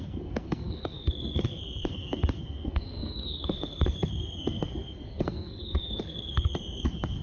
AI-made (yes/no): yes